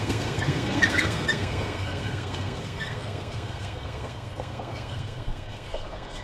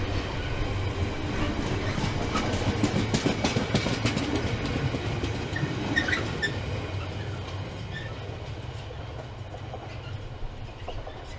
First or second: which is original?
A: second